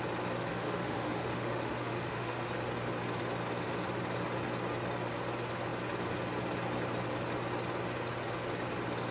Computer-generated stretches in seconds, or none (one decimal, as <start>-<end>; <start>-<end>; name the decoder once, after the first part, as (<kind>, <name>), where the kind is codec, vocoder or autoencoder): 0.5-2.5 (autoencoder, DAC-VAE)